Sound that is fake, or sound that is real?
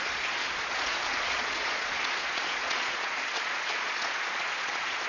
fake